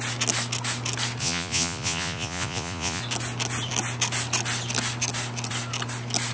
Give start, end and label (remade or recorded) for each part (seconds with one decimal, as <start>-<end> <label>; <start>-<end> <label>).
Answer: 0.0-1.2 recorded; 1.2-3.0 remade; 3.0-6.3 recorded